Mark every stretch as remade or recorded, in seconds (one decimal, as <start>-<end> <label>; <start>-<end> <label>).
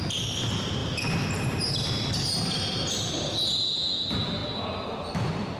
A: 0.0-5.6 recorded